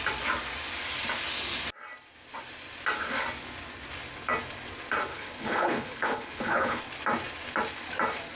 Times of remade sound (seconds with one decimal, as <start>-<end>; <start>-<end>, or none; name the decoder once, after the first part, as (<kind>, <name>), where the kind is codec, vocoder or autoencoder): 5.1-6.8 (codec, HILCodec)